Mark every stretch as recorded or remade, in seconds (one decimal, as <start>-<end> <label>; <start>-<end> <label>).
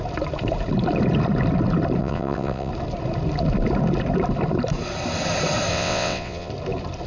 0.0-2.0 recorded; 2.0-2.7 remade; 2.7-5.7 recorded; 5.7-6.5 remade; 6.5-7.1 recorded